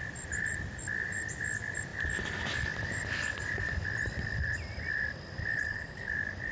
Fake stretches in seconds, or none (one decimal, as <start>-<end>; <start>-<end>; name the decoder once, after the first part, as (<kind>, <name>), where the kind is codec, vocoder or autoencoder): 5.5-6.1 (codec, HILCodec)